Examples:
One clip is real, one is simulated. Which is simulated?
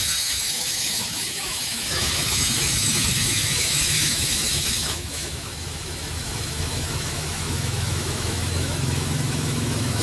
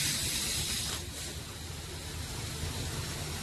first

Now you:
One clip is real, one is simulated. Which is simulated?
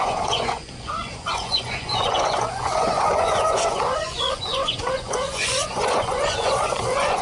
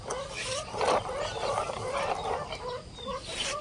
first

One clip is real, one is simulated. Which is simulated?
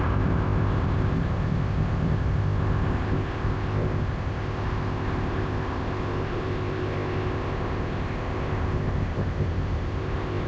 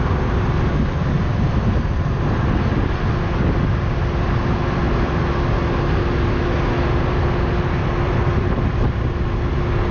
first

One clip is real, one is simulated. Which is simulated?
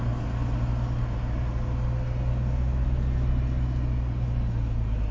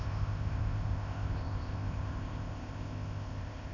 second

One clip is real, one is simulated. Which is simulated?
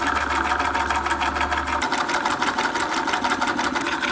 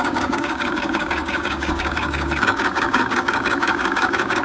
second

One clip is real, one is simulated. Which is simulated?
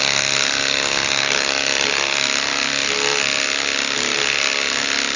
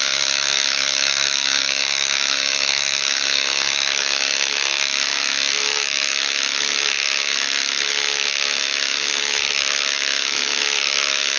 second